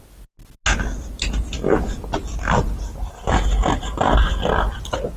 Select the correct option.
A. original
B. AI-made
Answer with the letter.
A